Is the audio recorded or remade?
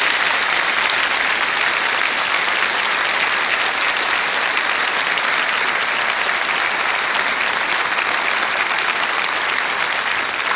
recorded